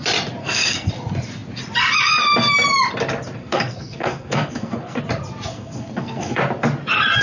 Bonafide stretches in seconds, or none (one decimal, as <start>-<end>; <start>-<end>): 0.0-0.4; 0.9-3.4; 5.0-5.5; 6.4-7.2